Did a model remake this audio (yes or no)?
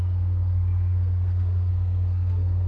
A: yes